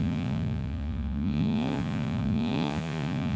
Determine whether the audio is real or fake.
fake